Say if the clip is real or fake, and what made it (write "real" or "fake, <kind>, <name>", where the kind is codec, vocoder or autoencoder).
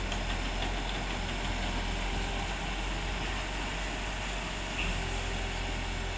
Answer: real